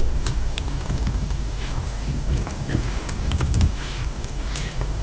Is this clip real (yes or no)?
no